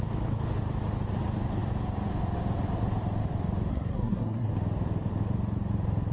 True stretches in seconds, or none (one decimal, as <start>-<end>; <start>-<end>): 0.0-3.7; 4.5-6.1